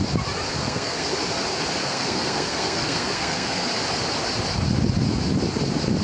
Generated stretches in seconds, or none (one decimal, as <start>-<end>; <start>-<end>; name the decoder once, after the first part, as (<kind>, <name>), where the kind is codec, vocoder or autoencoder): 0.6-1.1 (codec, SNAC); 1.8-3.7